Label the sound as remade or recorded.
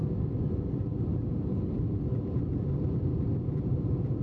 recorded